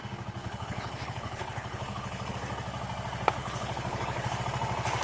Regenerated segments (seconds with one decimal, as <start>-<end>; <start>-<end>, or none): 0.4-2.3; 3.4-4.4